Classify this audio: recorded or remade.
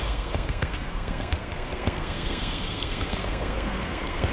remade